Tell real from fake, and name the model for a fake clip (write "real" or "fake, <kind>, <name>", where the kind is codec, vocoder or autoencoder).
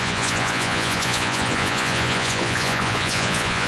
fake, vocoder, Vocos